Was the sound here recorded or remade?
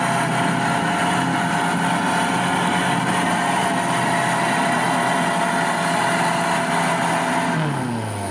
recorded